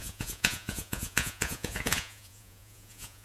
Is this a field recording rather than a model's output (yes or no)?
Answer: no